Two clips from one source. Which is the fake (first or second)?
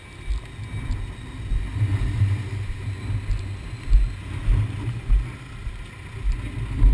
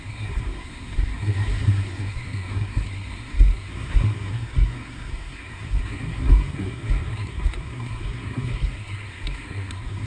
second